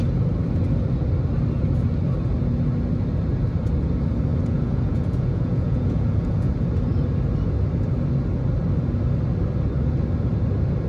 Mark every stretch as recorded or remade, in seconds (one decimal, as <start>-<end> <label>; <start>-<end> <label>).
0.0-4.3 recorded; 4.3-6.5 remade; 6.5-10.9 recorded